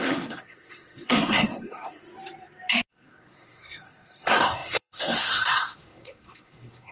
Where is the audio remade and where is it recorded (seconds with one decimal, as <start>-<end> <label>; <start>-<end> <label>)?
0.0-2.0 remade; 2.0-2.9 recorded; 2.9-6.9 remade